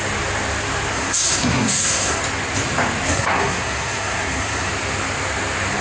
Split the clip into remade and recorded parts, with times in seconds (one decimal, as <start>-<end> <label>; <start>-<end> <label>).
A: 0.0-0.9 recorded; 0.9-2.2 remade; 2.2-3.1 recorded; 3.1-4.7 remade; 4.7-5.8 recorded